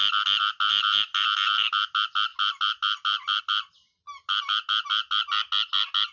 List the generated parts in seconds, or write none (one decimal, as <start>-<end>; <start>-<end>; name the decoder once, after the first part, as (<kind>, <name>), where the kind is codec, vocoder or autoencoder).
none